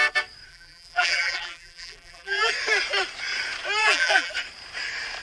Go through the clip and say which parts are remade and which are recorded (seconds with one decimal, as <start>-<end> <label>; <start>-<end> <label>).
0.0-0.5 recorded; 0.5-2.5 remade; 2.5-3.8 recorded; 3.8-4.3 remade; 4.3-5.2 recorded